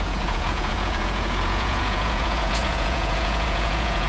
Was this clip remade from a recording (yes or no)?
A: yes